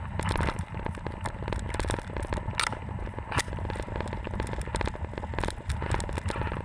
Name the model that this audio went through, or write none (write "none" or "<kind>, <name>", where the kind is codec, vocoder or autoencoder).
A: none